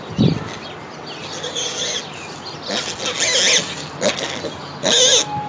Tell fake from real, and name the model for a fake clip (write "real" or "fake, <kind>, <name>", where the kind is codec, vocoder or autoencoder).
real